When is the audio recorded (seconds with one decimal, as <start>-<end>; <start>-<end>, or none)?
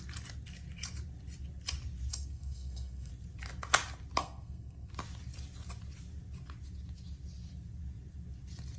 0.0-2.1; 3.1-4.2; 4.9-8.8